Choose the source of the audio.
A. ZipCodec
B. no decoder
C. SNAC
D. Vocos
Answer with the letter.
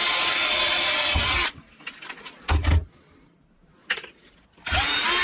B